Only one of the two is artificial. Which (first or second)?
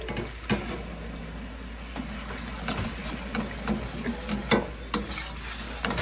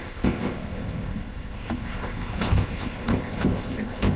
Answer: second